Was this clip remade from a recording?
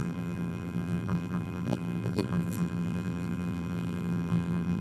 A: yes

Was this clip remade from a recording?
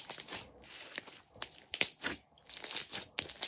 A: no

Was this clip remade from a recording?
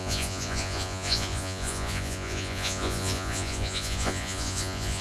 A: yes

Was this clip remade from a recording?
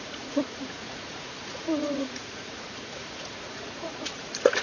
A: yes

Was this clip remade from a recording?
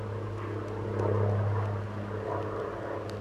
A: no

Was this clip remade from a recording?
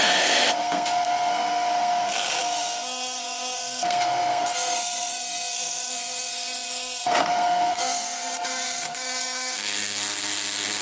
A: yes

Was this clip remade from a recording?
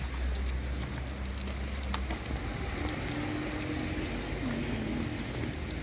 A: no